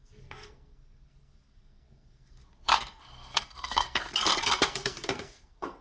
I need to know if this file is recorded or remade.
remade